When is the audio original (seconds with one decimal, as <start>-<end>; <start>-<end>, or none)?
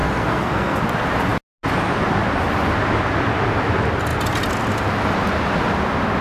0.8-6.2